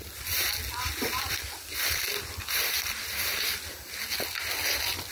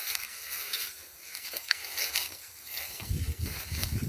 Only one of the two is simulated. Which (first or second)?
second